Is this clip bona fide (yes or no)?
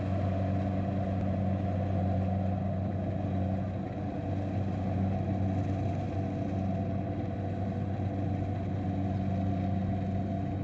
yes